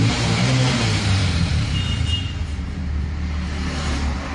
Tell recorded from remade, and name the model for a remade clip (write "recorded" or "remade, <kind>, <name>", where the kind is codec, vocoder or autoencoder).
remade, vocoder, BigVGAN v2